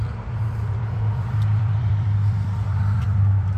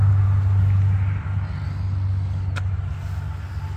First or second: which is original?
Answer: second